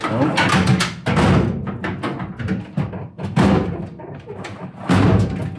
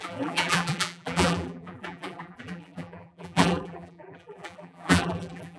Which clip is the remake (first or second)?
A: second